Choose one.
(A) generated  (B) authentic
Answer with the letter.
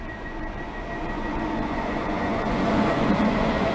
A